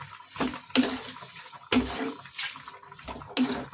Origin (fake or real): real